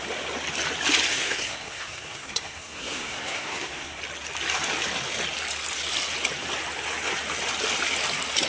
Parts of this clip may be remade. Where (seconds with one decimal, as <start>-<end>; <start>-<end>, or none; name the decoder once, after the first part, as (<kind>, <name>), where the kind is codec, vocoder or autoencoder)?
1.1-4.0 (codec, SNAC)